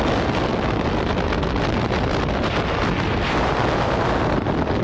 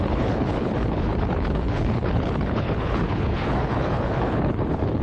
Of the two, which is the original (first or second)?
first